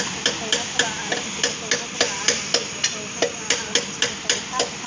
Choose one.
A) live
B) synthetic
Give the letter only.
A